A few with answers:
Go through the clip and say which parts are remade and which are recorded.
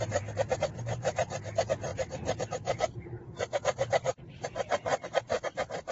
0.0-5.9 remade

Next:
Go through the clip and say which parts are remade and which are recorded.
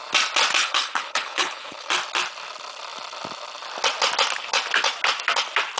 0.0-0.6 recorded; 0.6-1.9 remade; 1.9-5.8 recorded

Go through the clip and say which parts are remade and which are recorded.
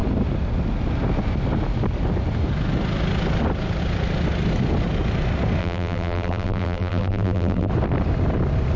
0.0-5.6 recorded; 5.6-7.7 remade; 7.7-8.8 recorded